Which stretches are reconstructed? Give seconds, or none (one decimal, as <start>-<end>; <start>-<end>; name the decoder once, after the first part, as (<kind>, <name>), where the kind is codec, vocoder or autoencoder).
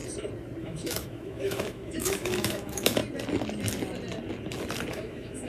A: 0.6-3.0 (autoencoder, DAC-VAE); 4.9-5.5